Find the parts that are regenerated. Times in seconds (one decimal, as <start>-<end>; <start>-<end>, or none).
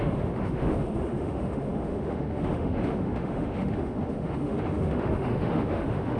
0.0-6.2